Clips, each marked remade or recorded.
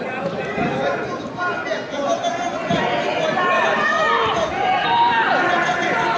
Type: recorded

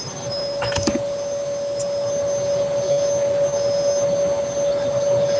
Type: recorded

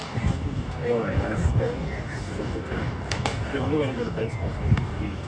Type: remade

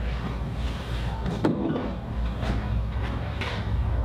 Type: remade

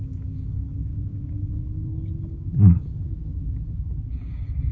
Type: remade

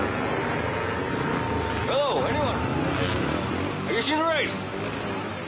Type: recorded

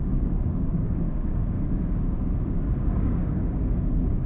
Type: remade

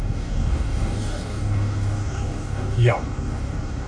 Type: remade